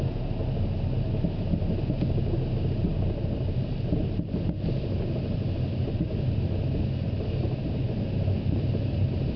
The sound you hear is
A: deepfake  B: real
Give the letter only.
B